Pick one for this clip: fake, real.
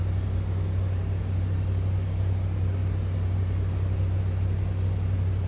real